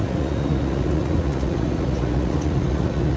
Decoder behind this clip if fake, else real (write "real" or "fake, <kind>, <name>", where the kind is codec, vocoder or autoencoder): fake, vocoder, Vocos